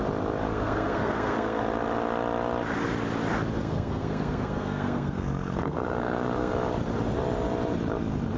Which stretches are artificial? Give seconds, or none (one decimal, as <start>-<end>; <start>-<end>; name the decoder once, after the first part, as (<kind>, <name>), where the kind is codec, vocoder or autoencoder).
0.5-1.6 (codec, SNAC); 3.6-6.5